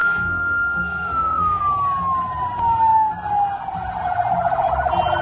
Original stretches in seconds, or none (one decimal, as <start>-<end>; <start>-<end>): 1.6-5.2